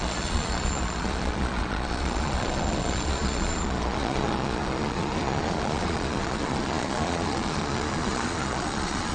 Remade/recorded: remade